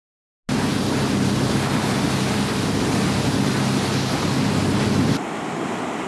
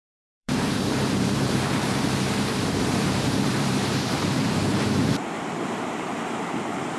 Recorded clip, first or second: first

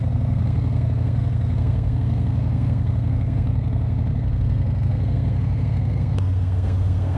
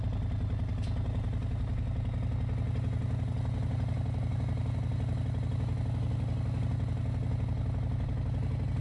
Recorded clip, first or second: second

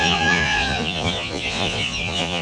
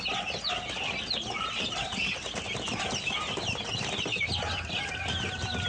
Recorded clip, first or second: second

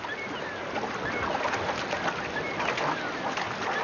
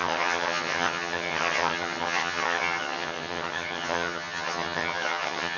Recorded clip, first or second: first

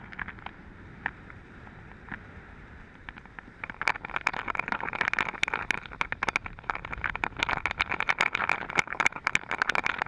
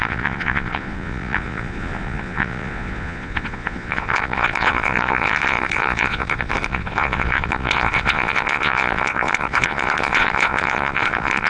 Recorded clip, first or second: first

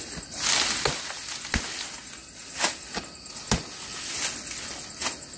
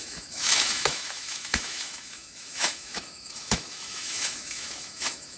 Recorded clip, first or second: first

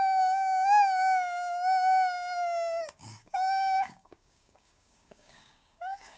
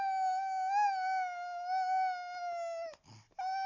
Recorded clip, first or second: second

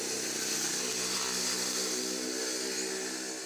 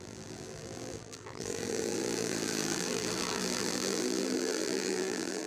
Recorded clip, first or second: first